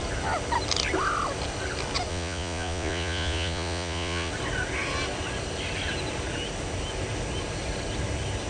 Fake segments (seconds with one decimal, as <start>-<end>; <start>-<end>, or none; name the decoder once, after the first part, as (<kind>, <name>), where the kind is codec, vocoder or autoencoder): 2.1-4.3 (vocoder, Vocos)